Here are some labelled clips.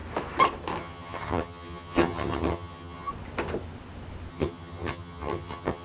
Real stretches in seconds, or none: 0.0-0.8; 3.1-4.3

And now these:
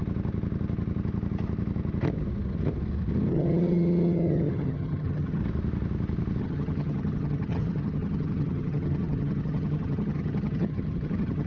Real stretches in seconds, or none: 0.0-3.3; 5.4-6.4

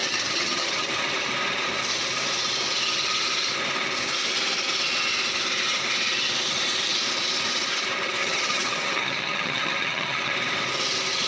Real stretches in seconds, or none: 0.9-8.2; 10.3-11.3

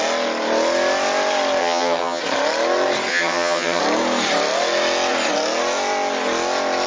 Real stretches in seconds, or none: 0.0-1.6; 2.2-3.1; 3.8-6.9

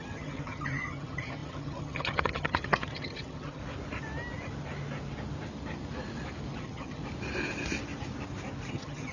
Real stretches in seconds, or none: 3.6-6.6; 7.0-8.7

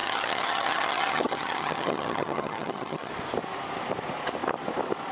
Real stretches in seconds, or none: 3.1-5.1

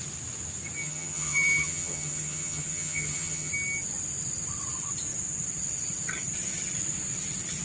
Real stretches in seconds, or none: 0.0-0.8; 3.5-7.6